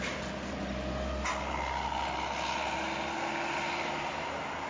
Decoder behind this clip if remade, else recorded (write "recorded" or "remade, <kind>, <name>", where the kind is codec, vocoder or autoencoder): recorded